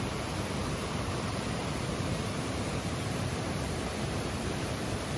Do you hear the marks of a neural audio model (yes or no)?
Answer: yes